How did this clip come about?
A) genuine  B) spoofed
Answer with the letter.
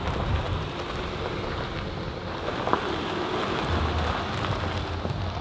A